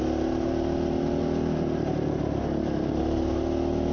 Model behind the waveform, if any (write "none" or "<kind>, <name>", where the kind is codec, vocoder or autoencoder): none